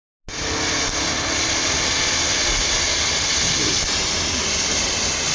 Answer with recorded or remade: recorded